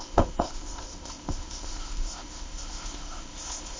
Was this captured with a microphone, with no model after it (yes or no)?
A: no